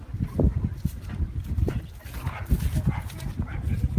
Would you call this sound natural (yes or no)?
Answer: yes